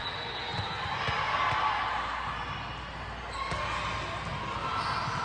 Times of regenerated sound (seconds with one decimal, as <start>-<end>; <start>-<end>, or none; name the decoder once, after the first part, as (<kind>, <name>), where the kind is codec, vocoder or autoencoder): none